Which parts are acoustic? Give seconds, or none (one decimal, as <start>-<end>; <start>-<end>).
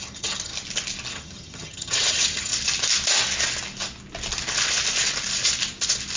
0.5-1.1; 2.5-6.2